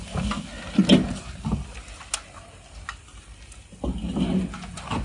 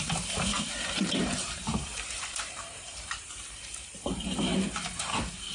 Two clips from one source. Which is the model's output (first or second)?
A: second